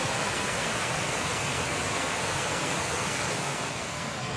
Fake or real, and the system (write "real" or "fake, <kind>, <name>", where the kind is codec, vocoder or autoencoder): fake, codec, SNAC